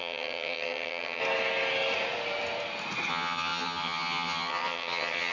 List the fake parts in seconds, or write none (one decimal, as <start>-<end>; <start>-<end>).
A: 0.0-1.2; 3.1-5.3

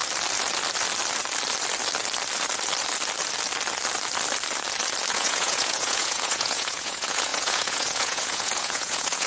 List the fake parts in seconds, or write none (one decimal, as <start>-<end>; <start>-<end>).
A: 5.1-9.3

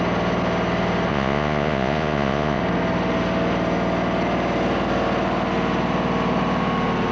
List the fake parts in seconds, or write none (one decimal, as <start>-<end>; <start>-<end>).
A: 1.1-2.6

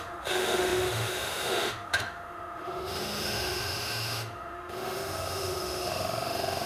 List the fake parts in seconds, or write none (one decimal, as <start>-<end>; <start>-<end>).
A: 0.0-6.7

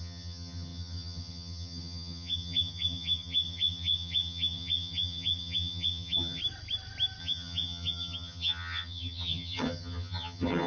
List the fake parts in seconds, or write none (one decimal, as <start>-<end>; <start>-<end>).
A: 0.0-6.4; 7.2-10.7

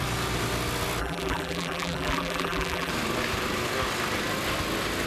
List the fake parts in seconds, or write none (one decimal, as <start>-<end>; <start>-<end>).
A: 1.0-2.9

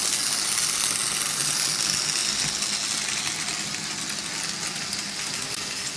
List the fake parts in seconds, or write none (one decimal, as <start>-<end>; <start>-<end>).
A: none

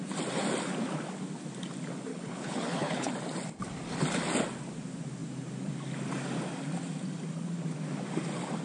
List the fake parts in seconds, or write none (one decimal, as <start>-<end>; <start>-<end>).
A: 2.1-3.1